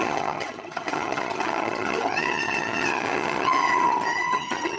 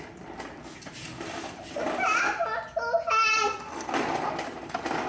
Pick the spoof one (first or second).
first